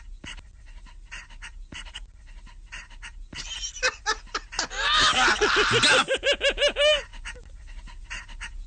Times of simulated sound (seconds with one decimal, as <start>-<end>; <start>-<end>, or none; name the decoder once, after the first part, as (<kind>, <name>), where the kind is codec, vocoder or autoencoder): none